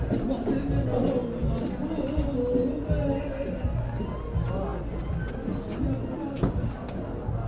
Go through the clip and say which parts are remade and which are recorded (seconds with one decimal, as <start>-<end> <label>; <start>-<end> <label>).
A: 0.0-7.5 recorded